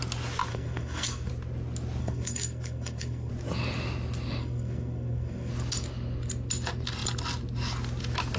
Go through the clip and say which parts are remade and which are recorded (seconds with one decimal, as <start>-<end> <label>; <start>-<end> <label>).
0.0-0.5 recorded; 0.5-1.3 remade; 1.3-2.0 recorded; 2.0-3.3 remade; 3.3-4.4 recorded; 4.4-5.5 remade; 5.5-8.4 recorded